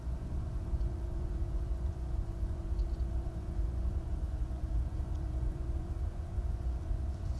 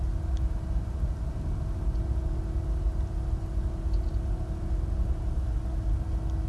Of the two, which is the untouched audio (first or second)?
second